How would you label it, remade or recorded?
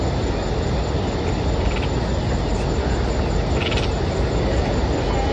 recorded